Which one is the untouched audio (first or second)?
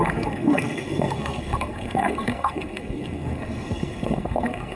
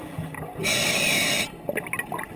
second